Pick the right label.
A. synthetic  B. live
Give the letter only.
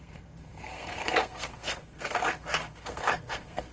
A